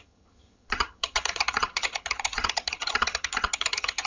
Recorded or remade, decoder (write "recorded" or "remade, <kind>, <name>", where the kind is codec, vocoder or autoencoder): remade, vocoder, HiFi-GAN